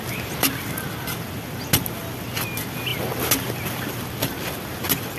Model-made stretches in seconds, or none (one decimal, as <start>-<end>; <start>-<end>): none